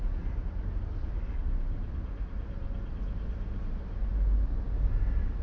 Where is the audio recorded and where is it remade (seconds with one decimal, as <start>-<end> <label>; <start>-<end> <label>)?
0.0-5.4 recorded